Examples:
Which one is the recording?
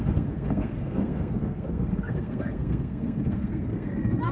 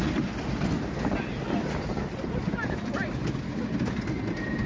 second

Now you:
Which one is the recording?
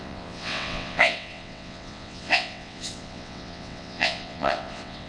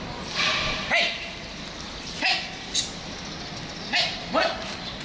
second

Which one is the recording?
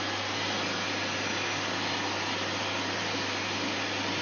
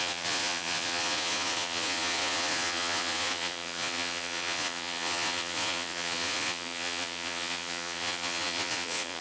first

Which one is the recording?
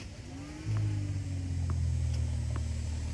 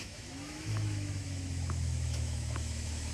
first